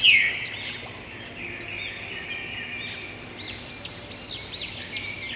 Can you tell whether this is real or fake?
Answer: real